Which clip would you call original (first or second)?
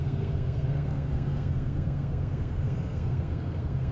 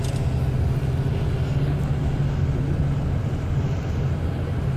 second